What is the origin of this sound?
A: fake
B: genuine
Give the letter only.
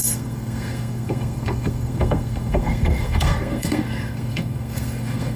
A